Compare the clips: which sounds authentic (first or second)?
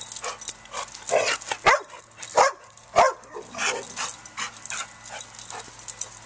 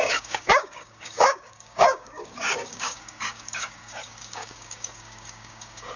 first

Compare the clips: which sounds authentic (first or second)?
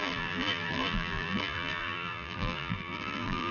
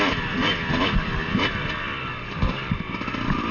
second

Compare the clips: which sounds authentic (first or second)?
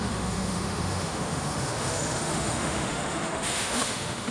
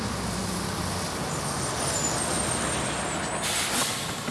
second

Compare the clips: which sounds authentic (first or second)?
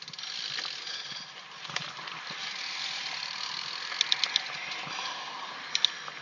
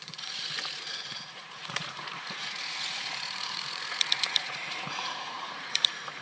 first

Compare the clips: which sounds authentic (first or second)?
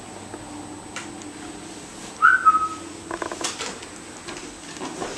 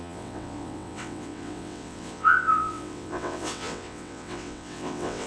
first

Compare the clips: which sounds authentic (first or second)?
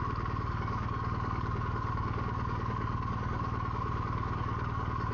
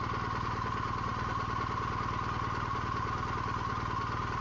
second